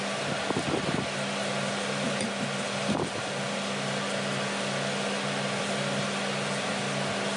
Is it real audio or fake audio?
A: real